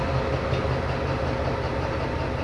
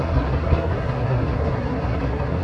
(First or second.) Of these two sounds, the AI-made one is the second